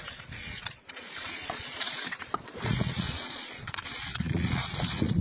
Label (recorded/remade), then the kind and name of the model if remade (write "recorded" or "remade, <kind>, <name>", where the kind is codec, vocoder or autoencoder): remade, vocoder, Vocos